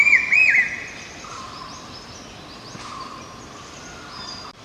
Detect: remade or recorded recorded